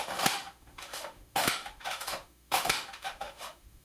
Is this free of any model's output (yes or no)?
no